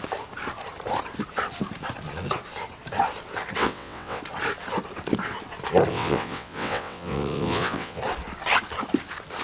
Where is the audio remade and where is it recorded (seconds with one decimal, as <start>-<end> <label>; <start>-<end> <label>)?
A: 0.0-3.6 recorded; 3.6-4.2 remade; 4.2-5.9 recorded; 5.9-8.0 remade; 8.0-9.4 recorded